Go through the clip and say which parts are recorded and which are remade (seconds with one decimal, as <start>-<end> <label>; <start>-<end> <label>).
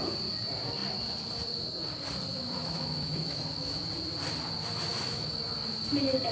0.0-2.3 recorded; 2.3-3.8 remade; 3.8-4.9 recorded; 4.9-5.4 remade; 5.4-6.3 recorded